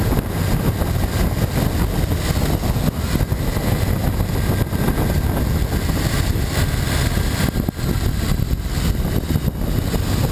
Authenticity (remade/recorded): recorded